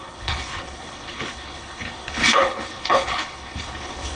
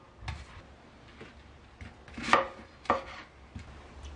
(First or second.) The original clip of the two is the second